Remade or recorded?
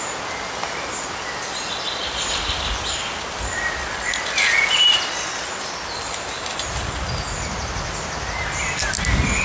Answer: recorded